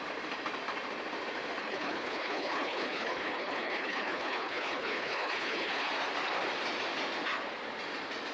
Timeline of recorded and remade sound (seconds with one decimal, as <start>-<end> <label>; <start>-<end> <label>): 0.0-1.6 recorded; 1.6-5.9 remade; 5.9-8.3 recorded